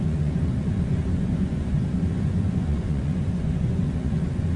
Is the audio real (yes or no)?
no